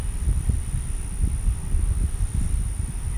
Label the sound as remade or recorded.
remade